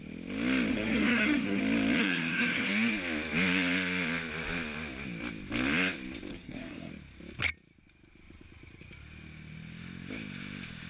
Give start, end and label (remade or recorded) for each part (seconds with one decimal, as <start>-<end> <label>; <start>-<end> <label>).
0.0-0.7 recorded; 0.7-1.6 remade; 1.6-2.0 recorded; 2.0-2.7 remade; 2.7-6.3 recorded; 6.3-6.9 remade; 6.9-10.9 recorded